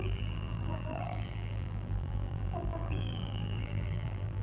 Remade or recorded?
remade